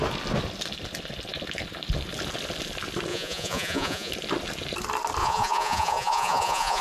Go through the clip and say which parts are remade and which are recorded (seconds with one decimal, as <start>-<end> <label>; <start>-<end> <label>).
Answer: 0.0-3.1 recorded; 3.1-4.1 remade; 4.1-5.2 recorded; 5.2-6.8 remade